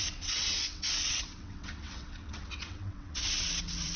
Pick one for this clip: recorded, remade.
remade